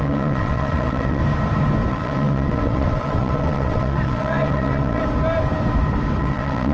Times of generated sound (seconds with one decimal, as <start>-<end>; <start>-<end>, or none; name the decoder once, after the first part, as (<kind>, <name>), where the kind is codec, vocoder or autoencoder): 0.0-1.2 (vocoder, WaveNeXt); 1.9-5.0; 6.2-6.7